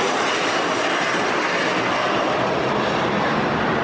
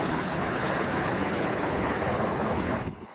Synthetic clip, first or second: second